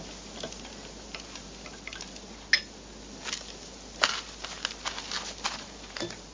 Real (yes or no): yes